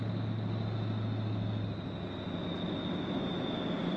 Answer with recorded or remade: recorded